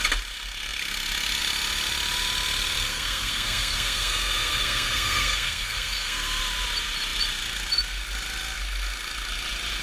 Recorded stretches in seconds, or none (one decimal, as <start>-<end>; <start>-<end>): 0.0-2.9; 6.4-9.8